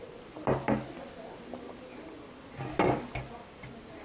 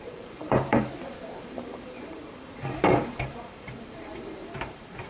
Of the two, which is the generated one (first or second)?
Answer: second